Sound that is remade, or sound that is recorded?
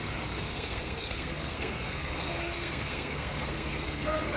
remade